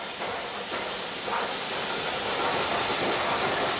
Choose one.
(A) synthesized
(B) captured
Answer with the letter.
B